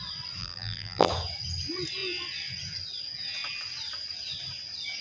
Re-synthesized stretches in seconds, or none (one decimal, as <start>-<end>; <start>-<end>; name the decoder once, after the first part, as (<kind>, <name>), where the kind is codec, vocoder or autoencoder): 0.4-1.1 (vocoder, BigVGAN v2)

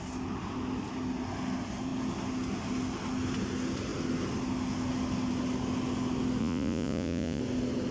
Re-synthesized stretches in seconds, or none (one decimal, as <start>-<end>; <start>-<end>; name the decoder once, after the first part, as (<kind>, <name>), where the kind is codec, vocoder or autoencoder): 6.4-7.4 (vocoder, Vocos)

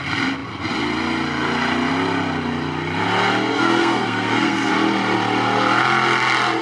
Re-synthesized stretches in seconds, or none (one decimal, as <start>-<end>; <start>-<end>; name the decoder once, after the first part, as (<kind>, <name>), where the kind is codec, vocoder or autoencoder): 3.5-4.7 (codec, SNAC)

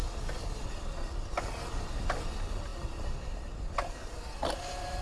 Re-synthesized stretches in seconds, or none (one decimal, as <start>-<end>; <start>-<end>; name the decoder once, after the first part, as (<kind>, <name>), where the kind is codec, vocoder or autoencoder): none

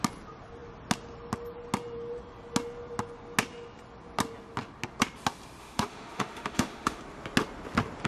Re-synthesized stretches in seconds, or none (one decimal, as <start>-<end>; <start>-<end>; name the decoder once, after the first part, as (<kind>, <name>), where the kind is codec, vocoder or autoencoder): 5.6-7.0 (autoencoder, DAC-VAE)